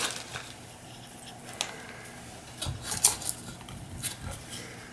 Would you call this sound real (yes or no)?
yes